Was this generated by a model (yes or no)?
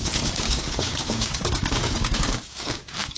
yes